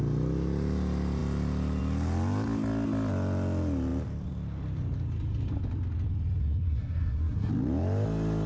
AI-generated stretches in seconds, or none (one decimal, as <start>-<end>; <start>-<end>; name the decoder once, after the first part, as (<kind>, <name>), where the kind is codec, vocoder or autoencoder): 6.4-7.5 (codec, SNAC)